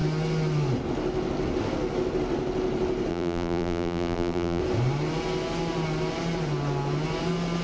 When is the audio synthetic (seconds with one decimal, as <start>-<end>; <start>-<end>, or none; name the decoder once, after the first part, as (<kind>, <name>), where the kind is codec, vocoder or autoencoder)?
3.1-4.6 (vocoder, BigVGAN v2)